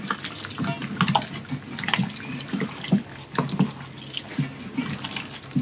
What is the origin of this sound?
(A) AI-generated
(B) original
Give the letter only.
B